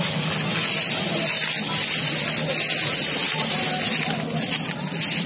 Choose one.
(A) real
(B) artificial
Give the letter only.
A